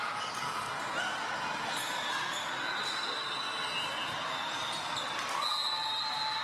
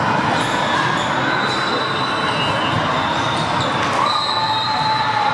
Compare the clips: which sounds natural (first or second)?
first